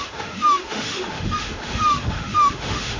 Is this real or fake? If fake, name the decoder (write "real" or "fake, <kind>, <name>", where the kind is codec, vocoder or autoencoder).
fake, autoencoder, DAC-VAE